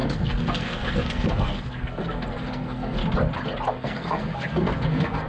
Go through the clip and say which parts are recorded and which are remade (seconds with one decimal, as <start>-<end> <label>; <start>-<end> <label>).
0.0-3.0 remade; 3.0-3.7 recorded; 3.7-5.3 remade